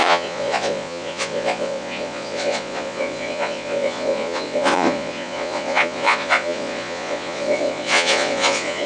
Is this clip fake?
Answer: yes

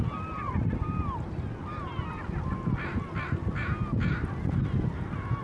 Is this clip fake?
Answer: no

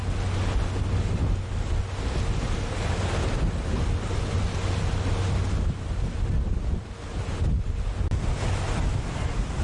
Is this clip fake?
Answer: no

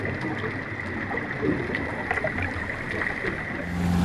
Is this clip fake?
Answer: no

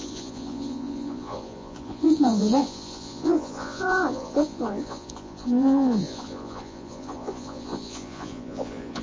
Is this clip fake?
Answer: yes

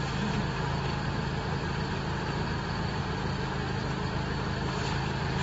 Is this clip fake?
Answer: no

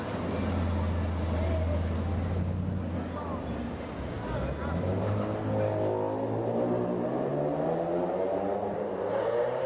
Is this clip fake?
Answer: no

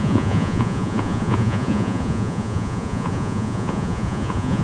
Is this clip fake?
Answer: yes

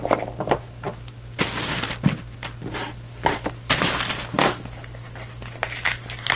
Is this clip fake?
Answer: no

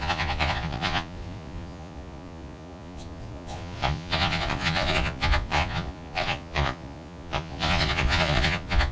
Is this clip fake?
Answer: yes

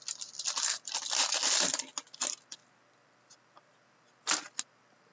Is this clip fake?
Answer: no